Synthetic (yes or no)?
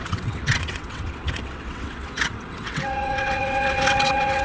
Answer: yes